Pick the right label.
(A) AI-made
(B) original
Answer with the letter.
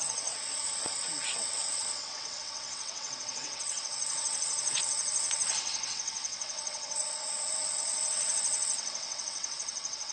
A